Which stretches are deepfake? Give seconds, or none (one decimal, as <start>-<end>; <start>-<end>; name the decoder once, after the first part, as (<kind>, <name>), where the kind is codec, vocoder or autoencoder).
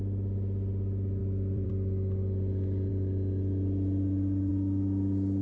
1.2-1.7 (vocoder, BigVGAN v2)